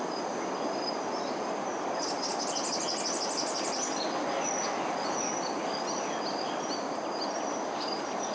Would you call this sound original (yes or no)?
yes